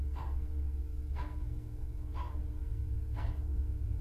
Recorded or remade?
remade